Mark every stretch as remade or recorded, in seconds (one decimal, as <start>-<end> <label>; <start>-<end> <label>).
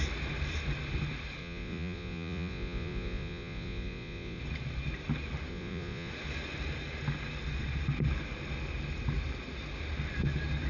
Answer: 0.0-1.4 recorded; 1.4-4.4 remade; 4.4-5.5 recorded; 5.5-6.1 remade; 6.1-10.7 recorded